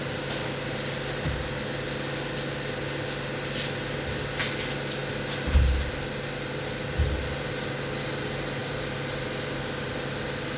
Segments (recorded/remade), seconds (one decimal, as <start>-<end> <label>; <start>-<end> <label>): 0.0-8.6 recorded; 8.6-10.0 remade; 10.0-10.6 recorded